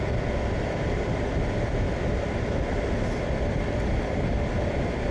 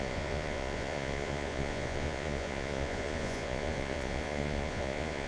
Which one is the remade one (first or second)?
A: second